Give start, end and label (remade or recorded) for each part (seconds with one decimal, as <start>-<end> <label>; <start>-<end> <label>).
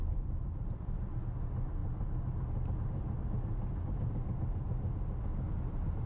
0.0-1.2 remade; 1.2-6.1 recorded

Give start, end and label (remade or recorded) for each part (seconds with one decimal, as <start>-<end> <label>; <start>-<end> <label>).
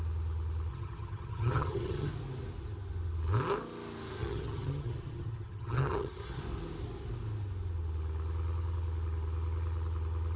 0.0-0.7 recorded; 0.7-2.1 remade; 2.1-4.2 recorded; 4.2-6.4 remade; 6.4-10.4 recorded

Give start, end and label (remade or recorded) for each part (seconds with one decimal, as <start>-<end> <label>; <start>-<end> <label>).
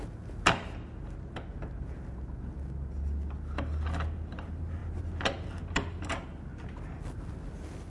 0.0-7.9 recorded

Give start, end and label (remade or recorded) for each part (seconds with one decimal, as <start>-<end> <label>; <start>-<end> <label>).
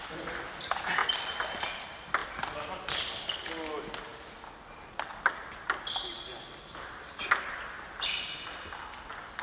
0.0-9.4 recorded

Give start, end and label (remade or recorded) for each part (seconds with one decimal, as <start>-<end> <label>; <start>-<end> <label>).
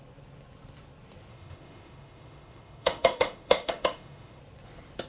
0.0-1.3 recorded; 1.3-4.4 remade; 4.4-5.1 recorded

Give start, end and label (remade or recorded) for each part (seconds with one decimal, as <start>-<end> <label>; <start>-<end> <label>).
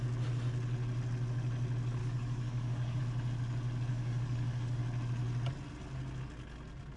0.0-2.0 recorded; 2.0-3.0 remade; 3.0-3.9 recorded; 3.9-4.8 remade; 4.8-7.0 recorded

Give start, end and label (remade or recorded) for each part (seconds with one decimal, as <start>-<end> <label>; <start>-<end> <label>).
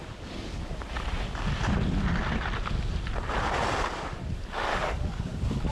0.0-4.7 recorded; 4.7-5.7 remade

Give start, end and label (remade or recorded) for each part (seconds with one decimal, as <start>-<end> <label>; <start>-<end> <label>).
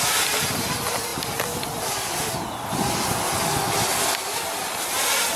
0.0-5.4 recorded